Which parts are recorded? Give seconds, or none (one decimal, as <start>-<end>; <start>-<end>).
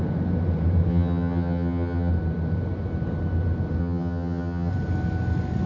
0.0-0.9; 2.1-3.8; 4.7-5.7